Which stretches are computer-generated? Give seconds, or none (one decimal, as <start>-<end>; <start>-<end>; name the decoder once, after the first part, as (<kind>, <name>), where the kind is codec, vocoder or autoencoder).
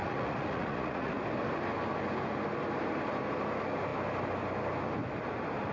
0.0-1.1 (vocoder, Vocos)